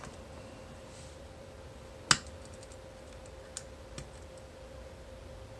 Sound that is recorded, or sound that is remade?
recorded